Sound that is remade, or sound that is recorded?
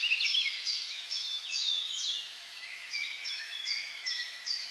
remade